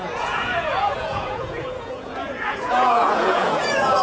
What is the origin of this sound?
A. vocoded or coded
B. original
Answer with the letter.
A